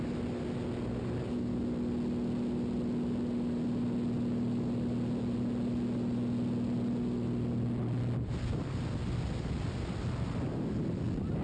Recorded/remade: recorded